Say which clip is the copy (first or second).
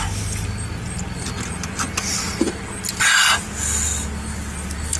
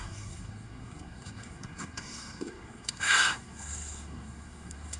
second